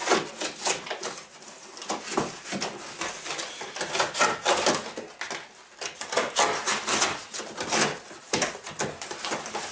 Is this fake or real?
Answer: real